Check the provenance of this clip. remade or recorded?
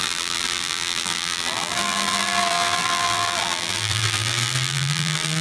remade